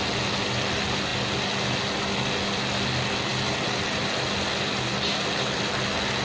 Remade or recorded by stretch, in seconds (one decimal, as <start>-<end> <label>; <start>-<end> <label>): 0.0-6.2 recorded

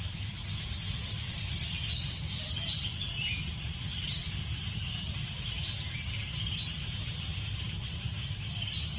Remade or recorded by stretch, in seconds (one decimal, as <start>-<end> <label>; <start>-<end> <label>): 0.0-9.0 recorded

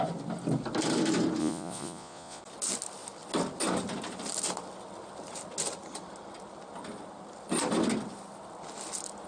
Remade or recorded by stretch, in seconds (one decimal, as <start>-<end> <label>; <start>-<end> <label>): 0.0-1.4 recorded; 1.4-2.4 remade; 2.4-9.3 recorded